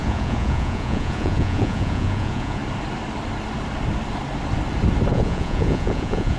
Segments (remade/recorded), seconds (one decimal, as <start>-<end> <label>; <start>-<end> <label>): 0.0-2.6 remade; 2.6-5.1 recorded; 5.1-6.4 remade